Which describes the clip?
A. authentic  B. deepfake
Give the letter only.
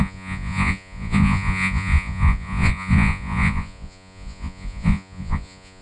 B